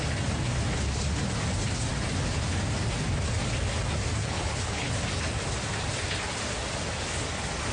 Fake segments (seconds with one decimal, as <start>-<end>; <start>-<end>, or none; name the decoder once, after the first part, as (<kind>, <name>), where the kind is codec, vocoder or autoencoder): 4.2-4.9 (codec, HILCodec)